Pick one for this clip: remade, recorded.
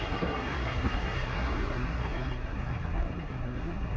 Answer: remade